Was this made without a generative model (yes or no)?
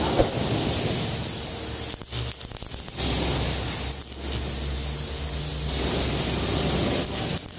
yes